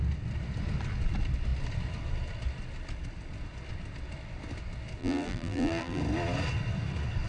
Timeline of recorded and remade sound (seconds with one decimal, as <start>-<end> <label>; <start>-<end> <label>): 0.0-5.0 recorded; 5.0-6.0 remade; 6.0-7.3 recorded